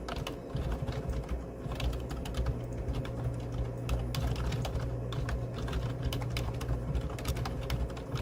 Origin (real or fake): real